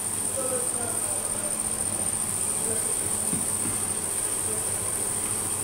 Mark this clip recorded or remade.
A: recorded